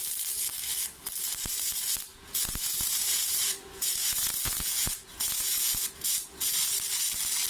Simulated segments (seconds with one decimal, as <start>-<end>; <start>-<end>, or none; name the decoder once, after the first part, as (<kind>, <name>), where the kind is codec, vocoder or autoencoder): 2.1-6.5 (vocoder, Vocos)